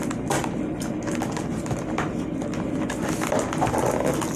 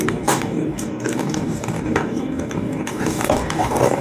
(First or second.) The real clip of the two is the first